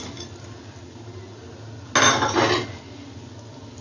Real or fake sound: real